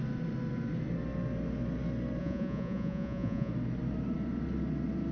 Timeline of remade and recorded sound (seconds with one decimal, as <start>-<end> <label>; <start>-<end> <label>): 0.0-2.2 recorded; 2.2-3.5 remade; 3.5-5.1 recorded

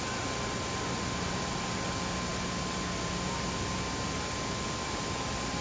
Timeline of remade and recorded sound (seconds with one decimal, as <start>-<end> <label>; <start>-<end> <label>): 0.0-5.6 recorded

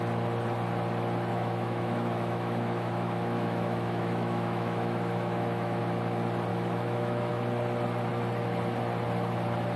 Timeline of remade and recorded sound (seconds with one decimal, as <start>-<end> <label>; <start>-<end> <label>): 0.0-1.3 recorded; 1.3-5.8 remade; 5.8-6.5 recorded; 6.5-7.3 remade; 7.3-9.8 recorded

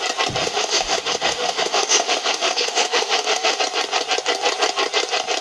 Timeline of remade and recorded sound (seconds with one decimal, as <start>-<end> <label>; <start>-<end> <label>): 0.0-0.4 recorded; 0.4-3.6 remade; 3.6-5.4 recorded

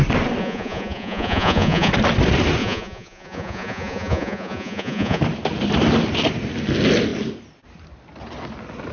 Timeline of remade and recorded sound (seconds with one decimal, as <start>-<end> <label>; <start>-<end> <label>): 0.0-0.4 recorded; 0.4-1.9 remade; 1.9-2.6 recorded; 2.6-5.2 remade; 5.2-8.9 recorded

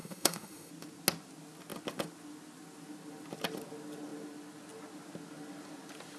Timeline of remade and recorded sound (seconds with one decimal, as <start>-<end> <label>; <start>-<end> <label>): 0.0-0.7 remade; 0.7-6.2 recorded